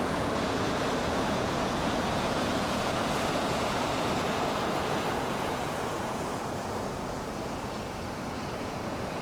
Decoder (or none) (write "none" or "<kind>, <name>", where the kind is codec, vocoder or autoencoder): vocoder, Vocos